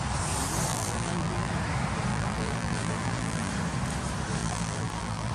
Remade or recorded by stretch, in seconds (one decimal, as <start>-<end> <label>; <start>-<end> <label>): 0.0-0.7 recorded; 0.7-1.5 remade; 1.5-2.1 recorded; 2.1-3.5 remade; 3.5-4.4 recorded; 4.4-5.3 remade